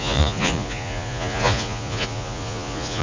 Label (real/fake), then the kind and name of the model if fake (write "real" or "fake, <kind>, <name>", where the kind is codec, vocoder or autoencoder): fake, vocoder, Vocos